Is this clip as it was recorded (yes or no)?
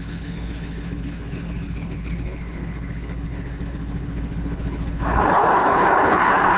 no